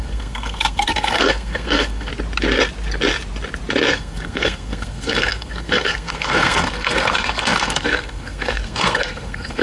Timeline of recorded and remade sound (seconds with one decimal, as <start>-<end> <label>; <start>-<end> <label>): 0.0-2.1 remade; 2.1-3.9 recorded; 3.9-9.6 remade